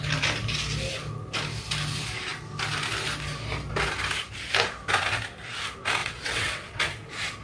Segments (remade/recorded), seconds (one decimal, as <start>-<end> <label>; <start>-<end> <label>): 0.0-6.0 recorded; 6.0-6.8 remade; 6.8-7.4 recorded